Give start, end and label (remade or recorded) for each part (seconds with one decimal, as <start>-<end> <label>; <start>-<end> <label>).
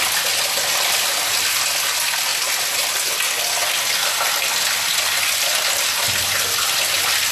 0.0-7.3 recorded